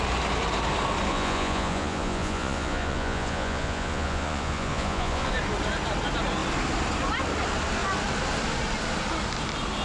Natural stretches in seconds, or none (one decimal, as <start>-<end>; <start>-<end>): 0.0-1.1; 5.3-9.8